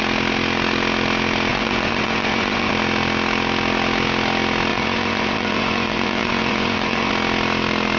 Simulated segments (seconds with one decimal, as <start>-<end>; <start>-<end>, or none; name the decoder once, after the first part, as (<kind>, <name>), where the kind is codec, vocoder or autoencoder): 1.5-2.7 (vocoder, Vocos); 4.7-7.1

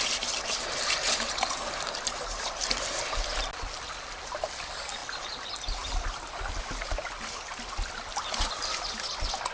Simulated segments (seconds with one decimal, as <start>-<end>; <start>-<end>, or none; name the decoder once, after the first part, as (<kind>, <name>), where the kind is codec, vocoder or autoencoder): none

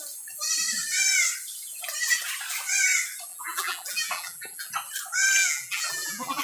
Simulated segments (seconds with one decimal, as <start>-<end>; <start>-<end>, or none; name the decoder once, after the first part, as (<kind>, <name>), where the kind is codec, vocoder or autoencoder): 3.3-4.7 (vocoder, BigVGAN v2); 5.4-6.4

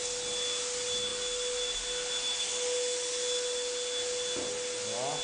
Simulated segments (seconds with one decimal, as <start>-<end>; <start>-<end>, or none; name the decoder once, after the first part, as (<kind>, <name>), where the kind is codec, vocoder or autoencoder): none

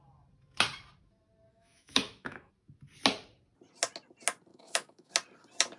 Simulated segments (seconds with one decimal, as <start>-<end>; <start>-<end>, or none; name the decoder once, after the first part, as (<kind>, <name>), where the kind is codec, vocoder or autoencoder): 1.5-2.5 (autoencoder, DAC-VAE); 4.5-5.1

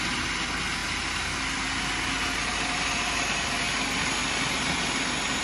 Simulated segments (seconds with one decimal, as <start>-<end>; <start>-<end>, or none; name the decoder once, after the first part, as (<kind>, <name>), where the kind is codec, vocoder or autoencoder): none

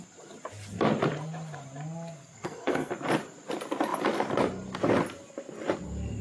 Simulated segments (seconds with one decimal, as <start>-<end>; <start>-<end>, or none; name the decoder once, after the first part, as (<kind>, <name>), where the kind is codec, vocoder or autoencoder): 2.2-2.9 (codec, SNAC)

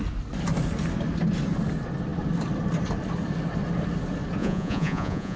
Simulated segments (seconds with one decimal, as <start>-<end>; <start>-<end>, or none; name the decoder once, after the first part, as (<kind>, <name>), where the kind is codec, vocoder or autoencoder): 4.4-5.4 (vocoder, Vocos)